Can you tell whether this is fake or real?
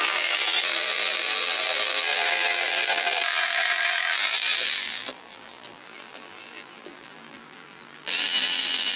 fake